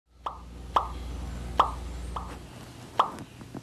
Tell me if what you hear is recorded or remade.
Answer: recorded